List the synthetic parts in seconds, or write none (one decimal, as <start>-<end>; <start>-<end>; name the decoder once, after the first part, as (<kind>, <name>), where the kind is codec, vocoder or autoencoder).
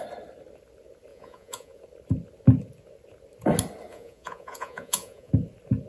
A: 1.1-1.8 (vocoder, Vocos); 3.9-5.3